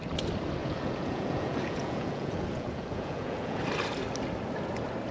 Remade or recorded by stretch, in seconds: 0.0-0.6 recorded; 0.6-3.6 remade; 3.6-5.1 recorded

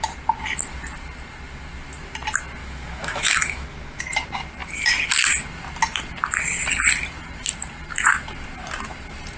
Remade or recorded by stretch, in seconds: 0.0-2.6 recorded; 2.6-4.0 remade; 4.0-9.4 recorded